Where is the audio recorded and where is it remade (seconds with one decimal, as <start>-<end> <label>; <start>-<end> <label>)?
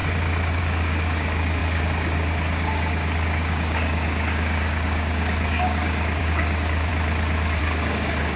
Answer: 0.0-0.6 recorded; 0.6-6.9 remade; 6.9-7.6 recorded; 7.6-8.4 remade